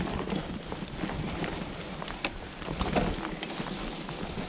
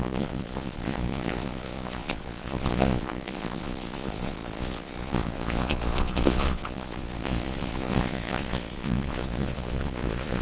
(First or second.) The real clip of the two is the first